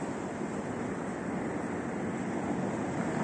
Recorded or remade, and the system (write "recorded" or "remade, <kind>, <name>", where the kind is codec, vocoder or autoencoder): recorded